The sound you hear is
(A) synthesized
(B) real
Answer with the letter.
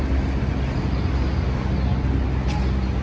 B